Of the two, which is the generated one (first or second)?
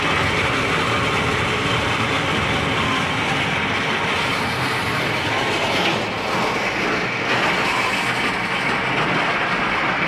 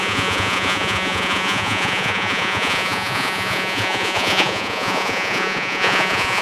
second